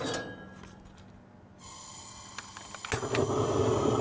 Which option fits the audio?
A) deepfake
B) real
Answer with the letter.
B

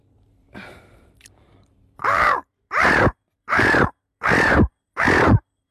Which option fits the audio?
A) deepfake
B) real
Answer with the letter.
A